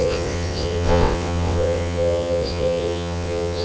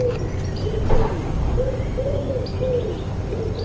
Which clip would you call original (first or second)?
second